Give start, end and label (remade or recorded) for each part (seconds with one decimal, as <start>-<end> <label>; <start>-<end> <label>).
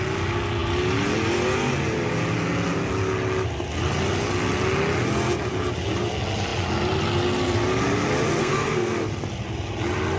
0.0-8.4 recorded; 8.4-8.9 remade; 8.9-10.2 recorded